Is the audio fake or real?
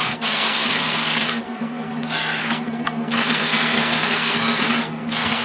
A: fake